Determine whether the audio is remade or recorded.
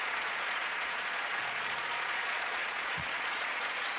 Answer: remade